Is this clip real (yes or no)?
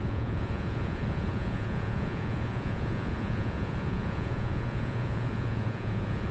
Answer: no